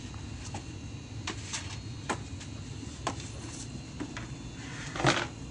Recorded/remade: recorded